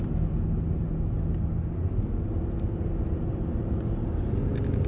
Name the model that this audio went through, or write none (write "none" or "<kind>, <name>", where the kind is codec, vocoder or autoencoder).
none